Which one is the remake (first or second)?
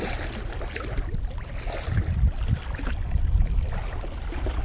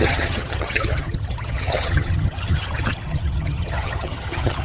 second